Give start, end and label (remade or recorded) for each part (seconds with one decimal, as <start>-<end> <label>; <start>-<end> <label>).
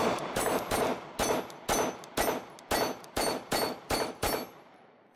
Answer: 0.0-0.9 remade; 0.9-3.0 recorded; 3.0-5.2 remade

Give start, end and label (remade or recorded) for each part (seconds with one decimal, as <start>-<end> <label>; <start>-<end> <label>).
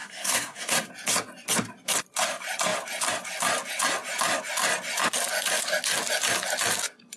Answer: 0.0-0.9 remade; 0.9-7.2 recorded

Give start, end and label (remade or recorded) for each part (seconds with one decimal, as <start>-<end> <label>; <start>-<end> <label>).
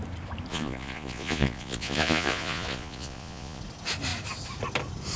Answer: 0.0-0.5 recorded; 0.5-3.6 remade; 3.6-5.2 recorded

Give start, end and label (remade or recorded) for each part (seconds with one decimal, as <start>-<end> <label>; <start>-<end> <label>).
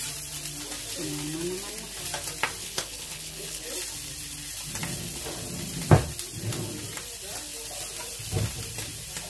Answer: 0.0-2.6 recorded; 2.6-3.6 remade; 3.6-9.3 recorded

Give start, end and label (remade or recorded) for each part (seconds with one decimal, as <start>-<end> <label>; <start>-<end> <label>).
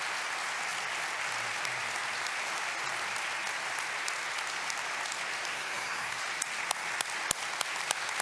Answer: 0.0-5.5 recorded; 5.5-6.2 remade; 6.2-8.2 recorded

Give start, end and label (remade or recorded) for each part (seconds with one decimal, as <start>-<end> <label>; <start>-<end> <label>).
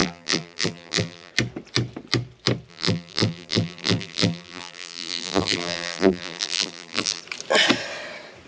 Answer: 0.0-1.3 remade; 1.3-2.7 recorded; 2.7-7.2 remade; 7.2-8.5 recorded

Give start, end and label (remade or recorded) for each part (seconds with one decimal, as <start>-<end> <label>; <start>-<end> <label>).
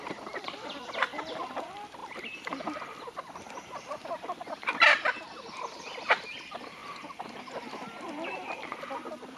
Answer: 0.0-6.8 remade; 6.8-7.4 recorded; 7.4-9.4 remade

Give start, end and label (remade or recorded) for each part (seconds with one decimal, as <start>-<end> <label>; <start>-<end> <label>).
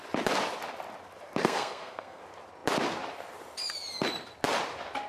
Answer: 0.0-1.4 recorded; 1.4-2.2 remade; 2.2-5.1 recorded